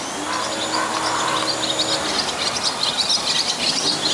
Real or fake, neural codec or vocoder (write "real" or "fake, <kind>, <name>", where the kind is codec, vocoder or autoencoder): real